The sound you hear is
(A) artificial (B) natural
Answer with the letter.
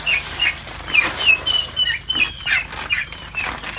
A